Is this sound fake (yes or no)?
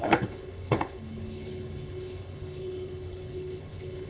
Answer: yes